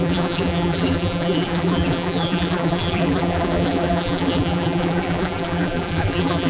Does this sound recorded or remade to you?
remade